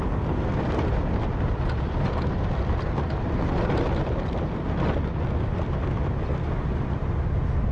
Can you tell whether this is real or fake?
real